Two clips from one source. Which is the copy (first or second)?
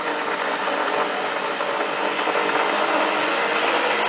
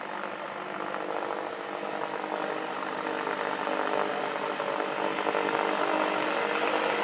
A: first